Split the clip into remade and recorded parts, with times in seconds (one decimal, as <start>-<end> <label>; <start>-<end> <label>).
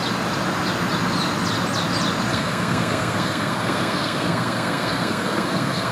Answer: 0.0-2.3 recorded; 2.3-5.9 remade